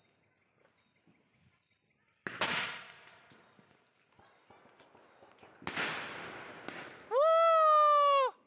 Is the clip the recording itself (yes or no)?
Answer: yes